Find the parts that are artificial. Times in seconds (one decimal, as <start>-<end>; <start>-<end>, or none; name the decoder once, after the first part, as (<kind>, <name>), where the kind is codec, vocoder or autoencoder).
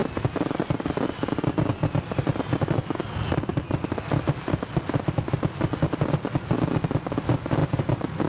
none